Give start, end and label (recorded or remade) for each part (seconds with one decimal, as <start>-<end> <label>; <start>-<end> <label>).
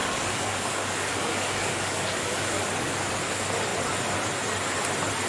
0.0-3.2 remade; 3.2-5.3 recorded